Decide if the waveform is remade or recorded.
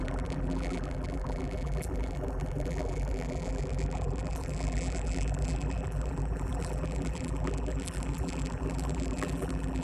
remade